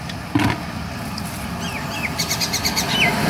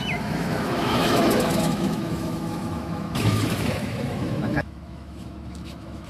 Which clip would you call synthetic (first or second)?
second